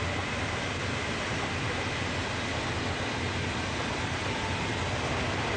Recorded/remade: recorded